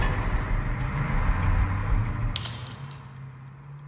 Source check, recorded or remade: recorded